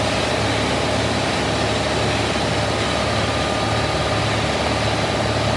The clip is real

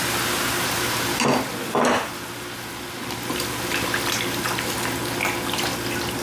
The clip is real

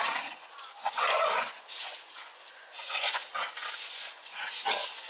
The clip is fake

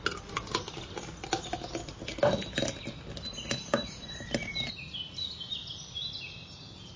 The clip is real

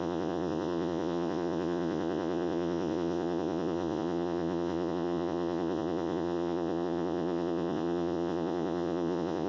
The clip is fake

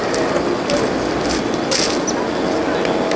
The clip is real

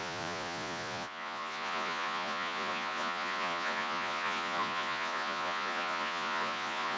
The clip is fake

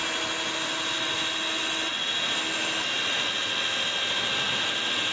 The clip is real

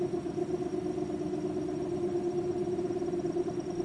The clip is real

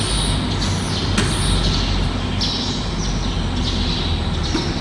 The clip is real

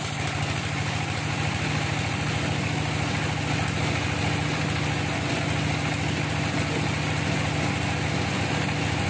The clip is real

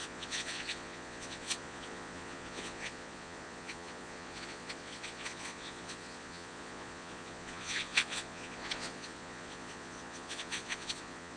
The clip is fake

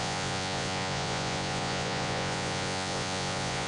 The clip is fake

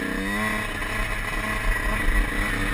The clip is real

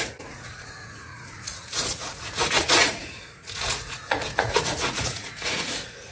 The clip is fake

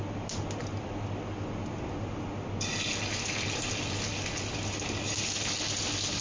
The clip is real